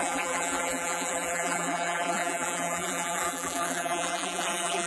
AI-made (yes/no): yes